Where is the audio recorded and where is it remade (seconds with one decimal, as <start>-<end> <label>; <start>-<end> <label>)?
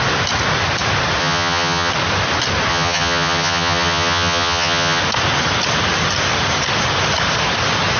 0.0-1.2 recorded; 1.2-1.9 remade; 1.9-2.7 recorded; 2.7-5.0 remade; 5.0-8.0 recorded